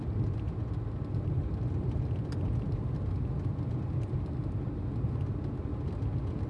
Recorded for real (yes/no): yes